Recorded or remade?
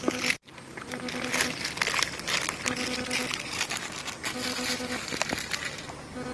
recorded